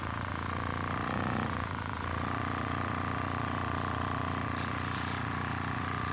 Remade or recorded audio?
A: remade